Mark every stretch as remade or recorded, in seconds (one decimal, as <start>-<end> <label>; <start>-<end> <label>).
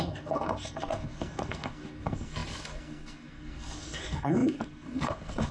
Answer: 0.0-5.5 remade